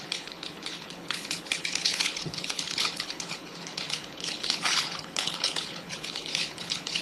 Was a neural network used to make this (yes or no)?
yes